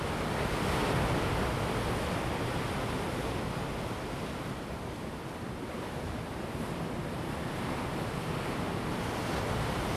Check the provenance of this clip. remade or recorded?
recorded